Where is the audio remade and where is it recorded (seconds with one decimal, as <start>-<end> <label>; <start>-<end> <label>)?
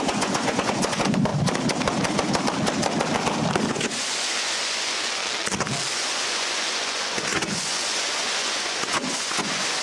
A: 0.0-1.3 remade; 1.3-3.7 recorded; 3.7-5.2 remade; 5.2-5.9 recorded; 5.9-9.8 remade